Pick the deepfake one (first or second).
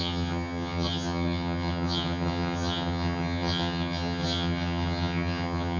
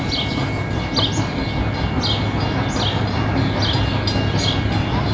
first